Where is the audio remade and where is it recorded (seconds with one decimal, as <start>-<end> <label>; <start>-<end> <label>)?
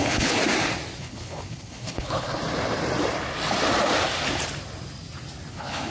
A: 0.0-0.4 remade; 0.4-1.0 recorded; 1.0-2.4 remade; 2.4-5.5 recorded; 5.5-5.9 remade